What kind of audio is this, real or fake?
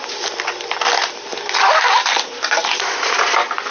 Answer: real